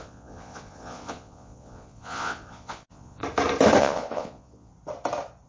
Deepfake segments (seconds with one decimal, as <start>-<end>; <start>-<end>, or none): 0.0-3.2; 3.8-4.7